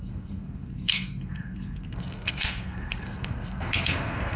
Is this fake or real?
fake